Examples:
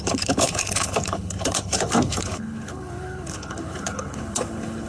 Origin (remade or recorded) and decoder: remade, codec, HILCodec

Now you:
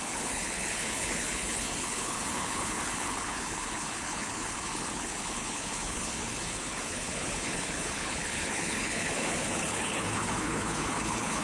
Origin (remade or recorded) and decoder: remade, codec, HILCodec